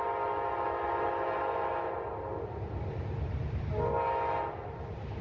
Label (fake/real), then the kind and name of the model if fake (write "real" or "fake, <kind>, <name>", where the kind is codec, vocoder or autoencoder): real